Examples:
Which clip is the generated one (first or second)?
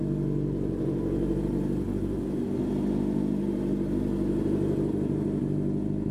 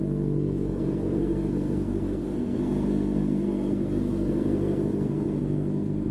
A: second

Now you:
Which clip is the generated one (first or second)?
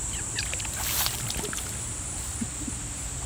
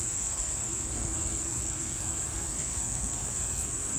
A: second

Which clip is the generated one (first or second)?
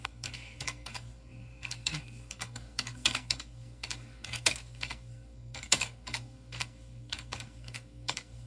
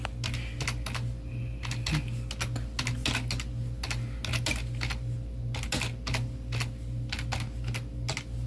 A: first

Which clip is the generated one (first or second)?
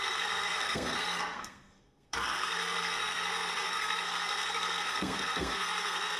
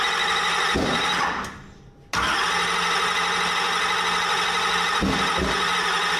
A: first